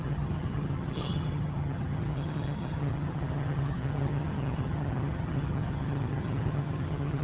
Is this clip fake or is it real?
fake